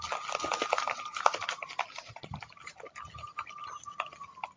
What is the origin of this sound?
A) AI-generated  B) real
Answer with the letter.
B